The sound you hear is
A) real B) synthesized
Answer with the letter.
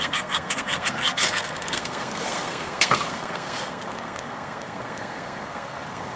B